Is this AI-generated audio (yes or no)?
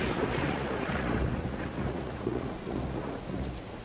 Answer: yes